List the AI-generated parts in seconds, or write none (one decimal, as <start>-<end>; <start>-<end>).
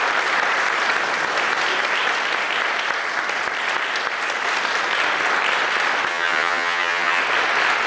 6.1-7.2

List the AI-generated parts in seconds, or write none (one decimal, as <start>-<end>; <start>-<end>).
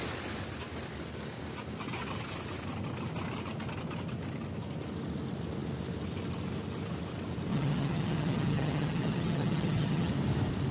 7.5-10.1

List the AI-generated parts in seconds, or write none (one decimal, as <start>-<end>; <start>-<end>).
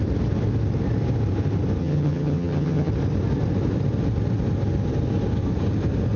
1.8-2.9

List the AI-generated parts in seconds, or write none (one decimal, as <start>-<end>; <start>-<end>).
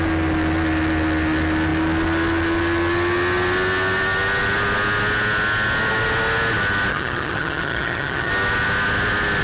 6.9-8.3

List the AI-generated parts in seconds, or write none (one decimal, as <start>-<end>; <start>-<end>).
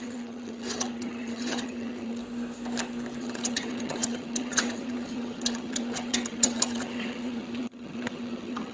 0.0-2.2; 3.2-8.7